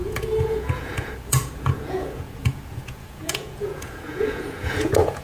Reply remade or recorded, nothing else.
remade